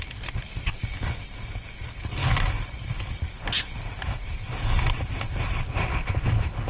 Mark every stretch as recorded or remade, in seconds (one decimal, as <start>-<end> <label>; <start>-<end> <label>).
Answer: 0.0-6.7 recorded